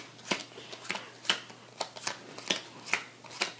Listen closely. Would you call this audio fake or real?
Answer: real